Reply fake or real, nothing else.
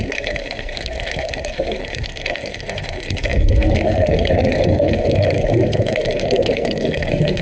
fake